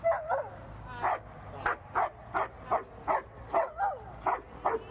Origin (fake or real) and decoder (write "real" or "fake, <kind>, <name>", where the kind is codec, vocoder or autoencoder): real